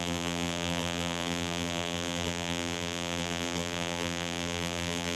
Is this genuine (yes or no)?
no